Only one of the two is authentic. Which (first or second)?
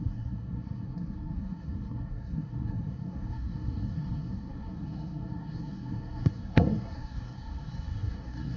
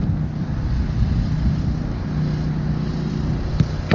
second